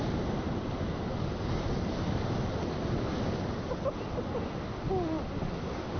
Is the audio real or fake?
real